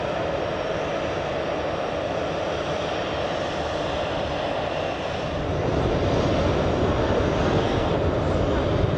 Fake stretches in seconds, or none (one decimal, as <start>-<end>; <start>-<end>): 7.4-7.9